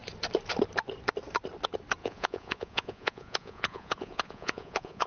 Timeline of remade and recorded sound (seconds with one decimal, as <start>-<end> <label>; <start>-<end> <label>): 0.0-2.0 recorded; 2.0-5.1 remade